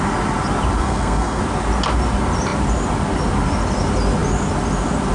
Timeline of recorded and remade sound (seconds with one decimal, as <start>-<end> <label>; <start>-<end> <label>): 0.0-0.8 recorded; 0.8-1.4 remade; 1.4-5.1 recorded